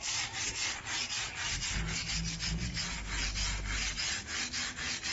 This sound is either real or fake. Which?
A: real